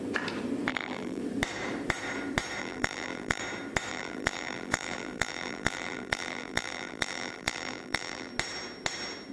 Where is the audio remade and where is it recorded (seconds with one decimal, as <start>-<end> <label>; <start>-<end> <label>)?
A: 0.0-0.7 recorded; 0.7-1.2 remade; 1.2-2.6 recorded; 2.6-3.4 remade; 3.4-3.9 recorded; 3.9-8.3 remade; 8.3-9.3 recorded